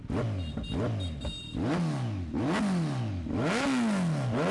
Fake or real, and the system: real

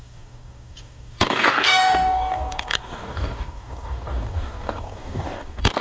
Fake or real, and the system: fake, codec, DAC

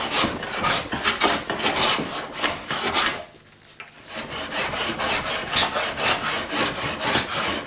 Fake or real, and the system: real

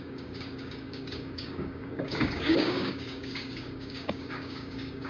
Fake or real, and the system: fake, codec, DAC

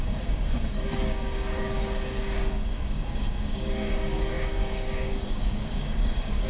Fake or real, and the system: fake, codec, DAC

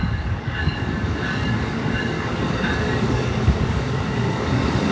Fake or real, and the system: fake, codec, DAC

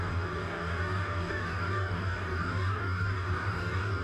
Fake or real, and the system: fake, codec, DAC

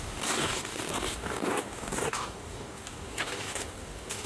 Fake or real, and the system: fake, codec, DAC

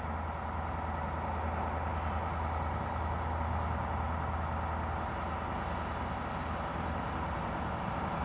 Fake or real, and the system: real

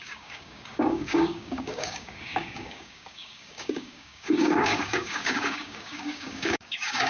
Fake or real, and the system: fake, codec, DAC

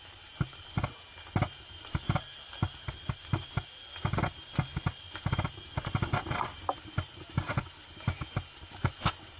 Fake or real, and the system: real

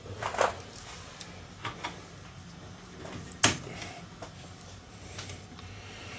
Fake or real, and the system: real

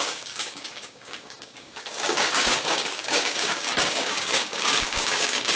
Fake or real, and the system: fake, codec, DAC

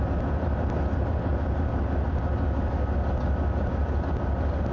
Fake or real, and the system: real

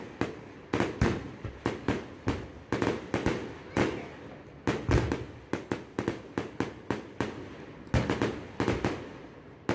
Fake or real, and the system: real